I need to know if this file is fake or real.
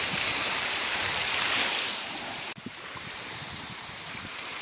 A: fake